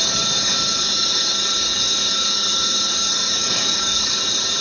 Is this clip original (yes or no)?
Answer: no